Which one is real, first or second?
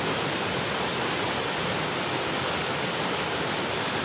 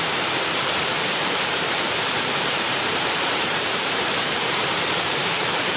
first